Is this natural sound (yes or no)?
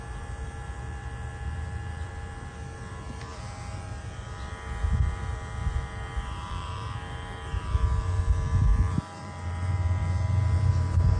no